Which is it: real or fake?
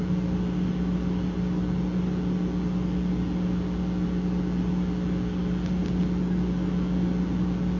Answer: real